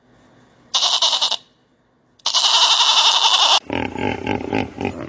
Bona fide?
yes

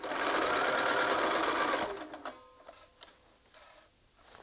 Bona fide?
yes